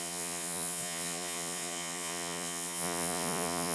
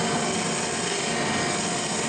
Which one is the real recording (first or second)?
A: second